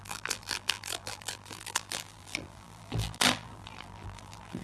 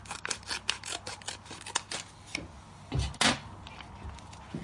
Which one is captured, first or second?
second